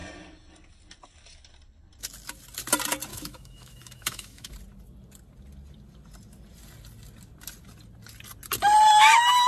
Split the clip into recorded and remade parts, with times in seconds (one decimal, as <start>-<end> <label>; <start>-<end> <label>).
0.0-3.1 recorded; 3.1-4.5 remade; 4.5-9.5 recorded